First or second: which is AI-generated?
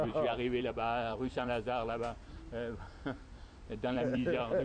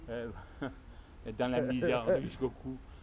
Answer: first